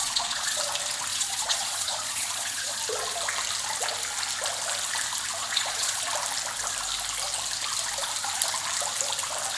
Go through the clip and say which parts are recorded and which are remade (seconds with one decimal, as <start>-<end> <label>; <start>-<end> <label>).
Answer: 0.0-0.6 remade; 0.6-1.1 recorded; 1.1-2.8 remade; 2.8-5.4 recorded; 5.4-6.0 remade; 6.0-9.6 recorded